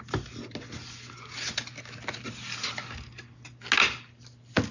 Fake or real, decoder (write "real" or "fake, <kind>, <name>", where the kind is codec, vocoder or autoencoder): real